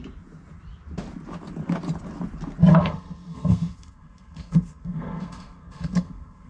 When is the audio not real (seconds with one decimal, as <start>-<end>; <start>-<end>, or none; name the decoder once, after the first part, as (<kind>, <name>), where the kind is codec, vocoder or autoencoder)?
2.7-6.5 (codec, SNAC)